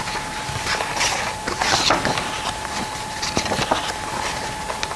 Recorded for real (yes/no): yes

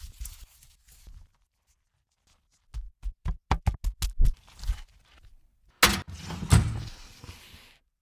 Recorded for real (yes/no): yes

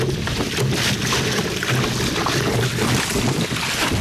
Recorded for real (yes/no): yes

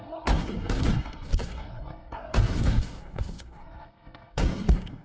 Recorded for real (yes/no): no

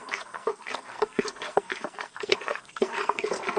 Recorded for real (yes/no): no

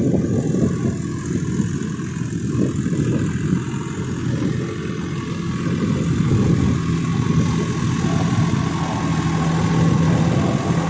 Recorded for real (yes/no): yes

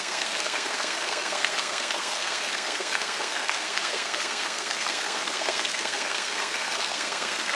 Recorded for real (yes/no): no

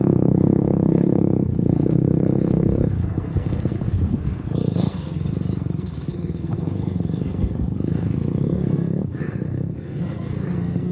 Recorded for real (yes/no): no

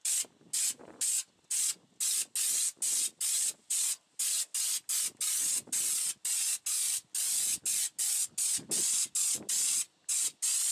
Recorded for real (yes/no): yes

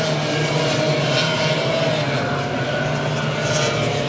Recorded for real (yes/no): yes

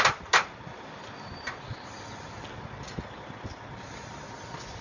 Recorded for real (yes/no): yes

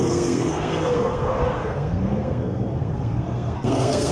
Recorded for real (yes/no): no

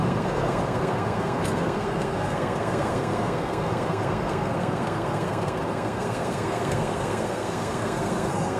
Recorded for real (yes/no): no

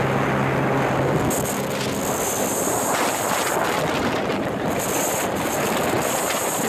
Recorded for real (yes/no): yes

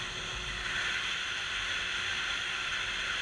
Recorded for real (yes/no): yes